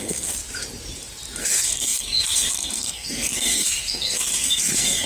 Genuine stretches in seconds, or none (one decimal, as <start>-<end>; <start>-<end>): 0.4-1.4